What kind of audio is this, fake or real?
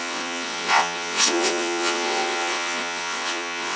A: fake